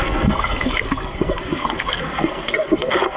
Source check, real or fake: fake